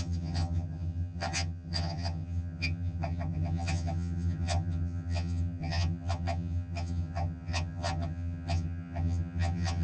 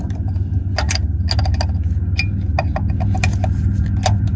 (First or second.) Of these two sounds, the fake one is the first